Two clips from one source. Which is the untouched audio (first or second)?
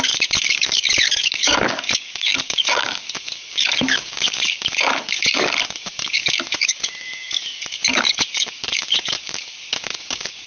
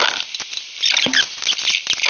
second